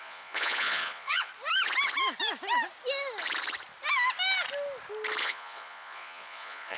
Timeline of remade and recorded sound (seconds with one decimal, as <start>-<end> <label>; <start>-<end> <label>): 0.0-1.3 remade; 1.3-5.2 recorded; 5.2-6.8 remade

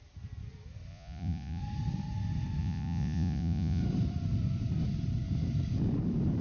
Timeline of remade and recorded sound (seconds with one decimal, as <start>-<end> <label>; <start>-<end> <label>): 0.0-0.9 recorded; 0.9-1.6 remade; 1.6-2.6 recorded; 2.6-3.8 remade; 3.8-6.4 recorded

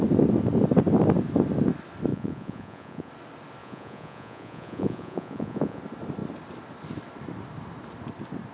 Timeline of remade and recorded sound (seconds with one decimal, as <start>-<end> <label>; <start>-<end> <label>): 0.0-2.1 recorded; 2.1-3.1 remade; 3.1-3.6 recorded; 3.6-5.8 remade; 5.8-8.5 recorded